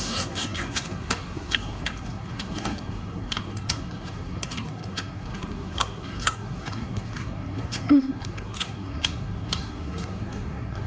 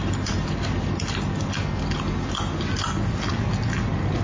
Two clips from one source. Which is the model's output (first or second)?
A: first